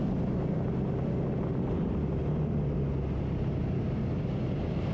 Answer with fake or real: real